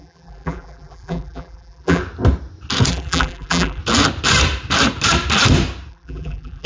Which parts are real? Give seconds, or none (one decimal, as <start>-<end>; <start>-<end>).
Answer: 2.0-2.9; 3.8-5.9

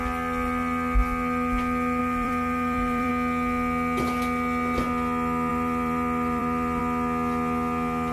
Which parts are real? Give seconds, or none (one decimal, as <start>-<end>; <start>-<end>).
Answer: 0.0-2.0; 3.1-5.5; 6.8-8.1

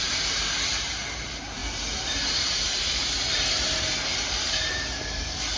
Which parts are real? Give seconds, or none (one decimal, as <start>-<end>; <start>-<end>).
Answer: 1.6-2.1

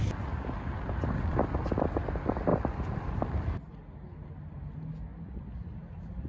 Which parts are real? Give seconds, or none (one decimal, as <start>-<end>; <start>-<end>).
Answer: 0.0-2.5; 3.5-5.1

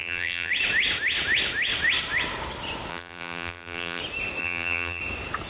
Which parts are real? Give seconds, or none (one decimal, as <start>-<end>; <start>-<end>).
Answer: 0.5-2.9; 4.0-4.4; 5.0-5.5

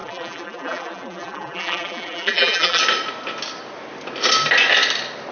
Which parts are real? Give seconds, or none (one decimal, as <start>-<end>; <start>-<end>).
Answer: 2.8-5.3